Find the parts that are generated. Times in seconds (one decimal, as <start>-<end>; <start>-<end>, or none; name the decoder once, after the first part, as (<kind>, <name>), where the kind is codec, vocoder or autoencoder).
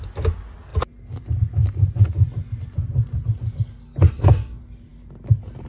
none